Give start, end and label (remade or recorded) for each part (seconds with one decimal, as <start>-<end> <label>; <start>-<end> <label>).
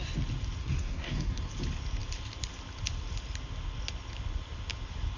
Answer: 0.0-0.6 recorded; 0.6-1.5 remade; 1.5-5.2 recorded